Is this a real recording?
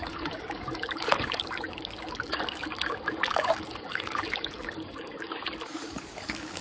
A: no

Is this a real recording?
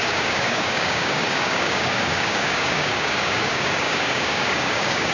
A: no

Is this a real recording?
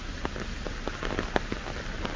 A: yes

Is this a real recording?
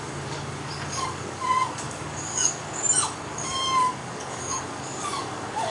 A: no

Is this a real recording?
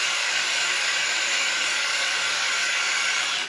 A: no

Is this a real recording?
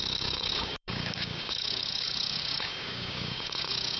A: no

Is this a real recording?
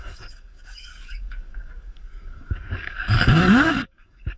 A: no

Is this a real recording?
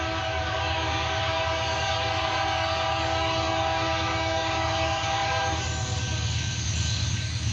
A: no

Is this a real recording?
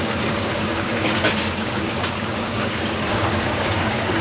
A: no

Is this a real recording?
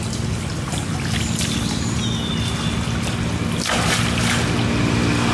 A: yes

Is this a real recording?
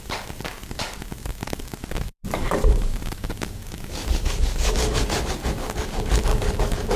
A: no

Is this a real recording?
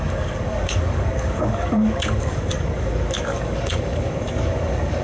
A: no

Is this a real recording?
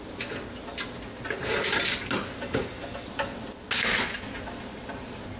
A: yes